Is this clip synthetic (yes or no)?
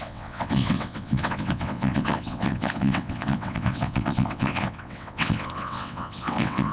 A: yes